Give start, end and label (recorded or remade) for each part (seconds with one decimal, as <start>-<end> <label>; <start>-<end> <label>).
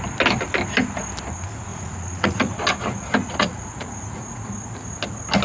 0.0-1.7 recorded; 1.7-2.6 remade; 2.6-3.2 recorded; 3.2-4.4 remade; 4.4-5.4 recorded